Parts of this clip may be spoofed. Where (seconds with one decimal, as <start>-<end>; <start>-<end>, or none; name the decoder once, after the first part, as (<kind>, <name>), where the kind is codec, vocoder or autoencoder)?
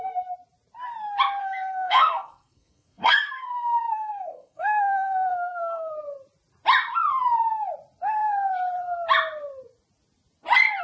1.4-5.9 (codec, SNAC)